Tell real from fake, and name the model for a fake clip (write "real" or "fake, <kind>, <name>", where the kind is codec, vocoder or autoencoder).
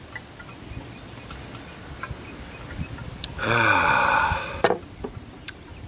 real